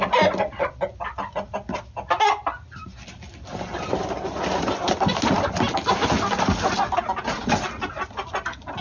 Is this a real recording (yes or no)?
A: yes